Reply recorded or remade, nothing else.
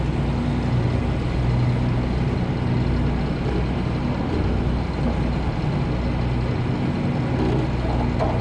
recorded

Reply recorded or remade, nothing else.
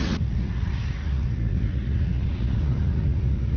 remade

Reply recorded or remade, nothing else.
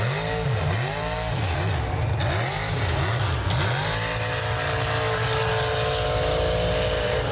recorded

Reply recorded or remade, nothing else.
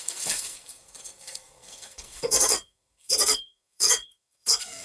remade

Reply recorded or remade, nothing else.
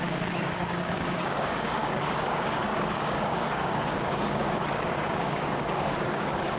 remade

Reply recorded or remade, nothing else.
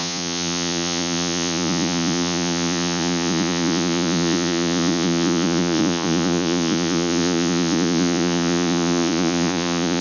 remade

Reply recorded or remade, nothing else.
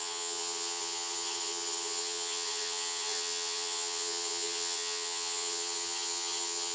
remade